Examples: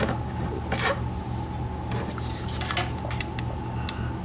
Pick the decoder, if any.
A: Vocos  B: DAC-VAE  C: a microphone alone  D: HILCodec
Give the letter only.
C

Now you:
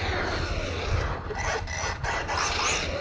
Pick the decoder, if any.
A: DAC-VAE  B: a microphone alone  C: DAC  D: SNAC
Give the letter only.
B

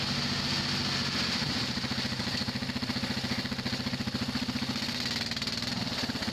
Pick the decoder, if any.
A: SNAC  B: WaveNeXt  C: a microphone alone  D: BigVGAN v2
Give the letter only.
C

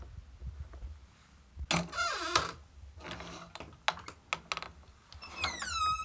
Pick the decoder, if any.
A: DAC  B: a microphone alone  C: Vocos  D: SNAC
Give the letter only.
B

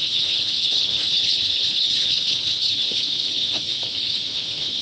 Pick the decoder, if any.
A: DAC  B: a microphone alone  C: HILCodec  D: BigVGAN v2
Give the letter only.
C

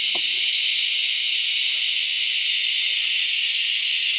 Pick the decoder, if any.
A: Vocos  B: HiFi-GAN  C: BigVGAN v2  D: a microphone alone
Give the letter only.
D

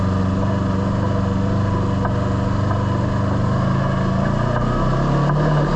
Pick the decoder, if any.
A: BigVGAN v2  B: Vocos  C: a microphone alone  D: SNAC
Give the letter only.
C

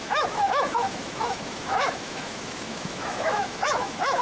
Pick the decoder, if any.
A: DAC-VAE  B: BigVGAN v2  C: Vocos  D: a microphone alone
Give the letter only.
A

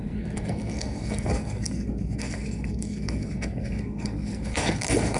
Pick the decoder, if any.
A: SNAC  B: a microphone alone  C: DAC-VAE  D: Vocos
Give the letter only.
A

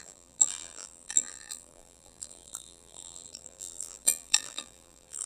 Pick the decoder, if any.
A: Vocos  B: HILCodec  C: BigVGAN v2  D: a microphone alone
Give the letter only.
C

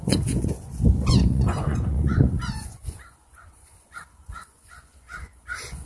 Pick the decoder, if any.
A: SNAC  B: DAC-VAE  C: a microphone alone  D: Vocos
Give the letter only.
D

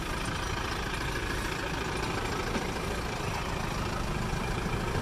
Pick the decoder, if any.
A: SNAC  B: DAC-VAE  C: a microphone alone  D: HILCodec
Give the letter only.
C